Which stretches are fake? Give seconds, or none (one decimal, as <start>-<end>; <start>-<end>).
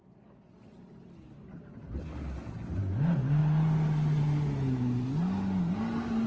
none